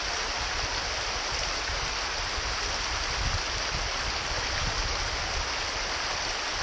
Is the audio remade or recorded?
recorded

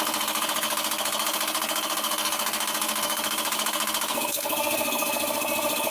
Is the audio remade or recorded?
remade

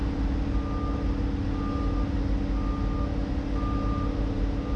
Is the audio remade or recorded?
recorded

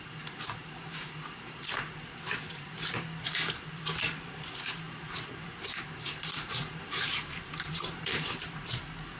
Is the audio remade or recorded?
remade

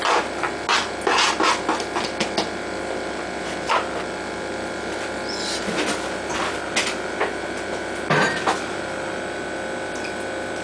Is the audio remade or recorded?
recorded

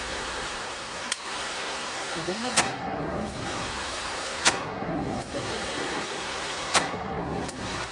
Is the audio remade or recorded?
remade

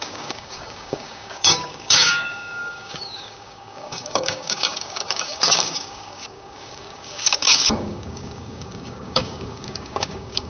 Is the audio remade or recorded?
remade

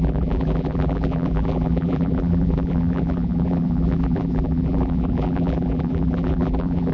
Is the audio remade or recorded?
remade